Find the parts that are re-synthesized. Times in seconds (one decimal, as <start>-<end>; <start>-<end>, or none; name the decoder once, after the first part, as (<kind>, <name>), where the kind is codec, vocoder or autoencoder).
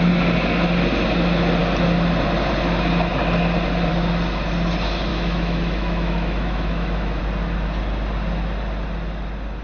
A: 5.1-7.2 (autoencoder, DAC-VAE)